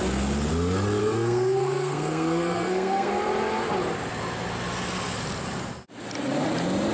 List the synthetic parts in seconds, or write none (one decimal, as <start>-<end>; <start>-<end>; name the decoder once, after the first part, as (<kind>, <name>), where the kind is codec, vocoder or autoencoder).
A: 1.0-3.1 (codec, SNAC)